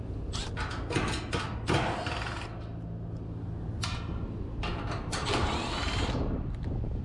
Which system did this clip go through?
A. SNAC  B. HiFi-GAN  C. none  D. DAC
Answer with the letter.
C